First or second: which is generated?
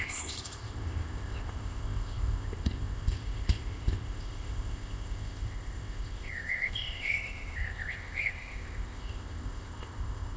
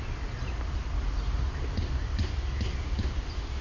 first